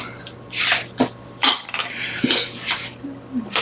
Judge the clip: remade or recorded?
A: remade